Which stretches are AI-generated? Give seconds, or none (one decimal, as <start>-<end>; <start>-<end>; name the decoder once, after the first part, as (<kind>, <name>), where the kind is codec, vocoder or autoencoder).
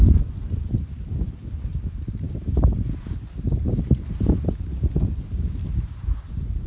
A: 0.0-1.4 (vocoder, BigVGAN v2); 2.1-4.7; 5.5-6.7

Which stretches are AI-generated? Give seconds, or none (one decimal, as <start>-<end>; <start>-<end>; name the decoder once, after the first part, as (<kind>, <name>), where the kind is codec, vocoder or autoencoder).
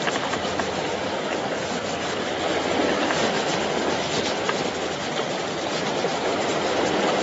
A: 2.8-3.5 (vocoder, BigVGAN v2)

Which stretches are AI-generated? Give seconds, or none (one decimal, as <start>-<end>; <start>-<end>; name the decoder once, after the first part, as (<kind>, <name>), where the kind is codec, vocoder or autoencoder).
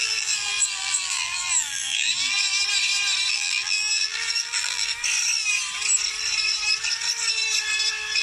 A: 0.0-2.4 (vocoder, BigVGAN v2); 3.3-4.9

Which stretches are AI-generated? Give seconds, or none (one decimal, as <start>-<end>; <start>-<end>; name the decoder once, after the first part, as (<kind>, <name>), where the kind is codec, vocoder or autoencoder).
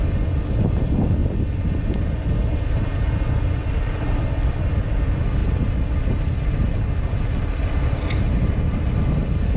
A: 0.0-1.2 (vocoder, BigVGAN v2); 4.2-9.6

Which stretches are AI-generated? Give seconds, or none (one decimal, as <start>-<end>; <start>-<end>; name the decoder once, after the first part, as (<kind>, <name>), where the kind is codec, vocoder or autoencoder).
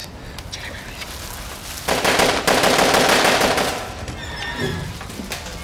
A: none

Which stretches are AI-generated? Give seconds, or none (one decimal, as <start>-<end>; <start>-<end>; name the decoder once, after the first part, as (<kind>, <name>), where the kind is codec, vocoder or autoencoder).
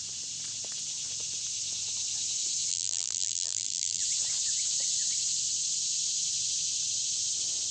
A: 2.7-4.0 (vocoder, BigVGAN v2)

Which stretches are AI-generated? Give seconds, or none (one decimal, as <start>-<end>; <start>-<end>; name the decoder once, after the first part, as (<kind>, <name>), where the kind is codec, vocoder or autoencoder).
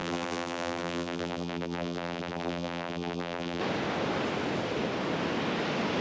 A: 0.0-3.6 (vocoder, BigVGAN v2)